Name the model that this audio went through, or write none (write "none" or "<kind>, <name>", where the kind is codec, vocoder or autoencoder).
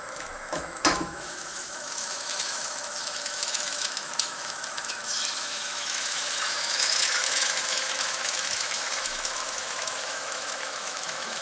autoencoder, DAC-VAE